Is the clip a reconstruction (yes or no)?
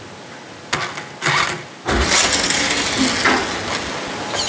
no